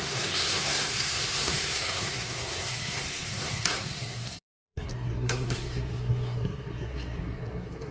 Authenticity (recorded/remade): remade